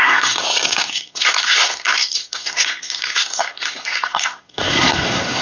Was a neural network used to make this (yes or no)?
yes